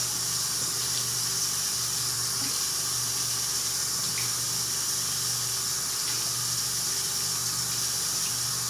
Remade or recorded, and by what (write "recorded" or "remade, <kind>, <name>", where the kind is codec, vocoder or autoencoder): recorded